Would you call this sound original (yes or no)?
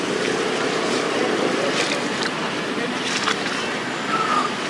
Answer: yes